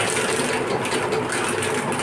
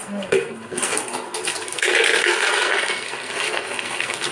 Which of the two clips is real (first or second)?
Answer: first